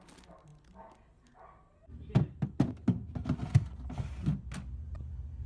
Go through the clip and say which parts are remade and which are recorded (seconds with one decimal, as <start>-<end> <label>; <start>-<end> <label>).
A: 0.0-5.5 recorded